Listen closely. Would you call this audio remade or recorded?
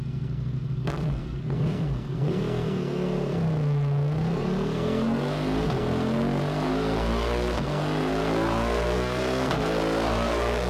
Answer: remade